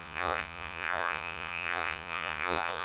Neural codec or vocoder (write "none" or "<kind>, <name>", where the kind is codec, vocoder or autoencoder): vocoder, Vocos